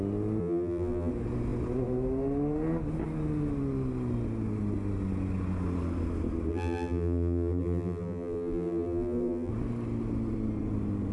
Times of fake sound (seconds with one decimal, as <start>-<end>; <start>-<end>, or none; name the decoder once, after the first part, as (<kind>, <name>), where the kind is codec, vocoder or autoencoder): 0.4-1.1 (vocoder, BigVGAN v2); 6.5-9.5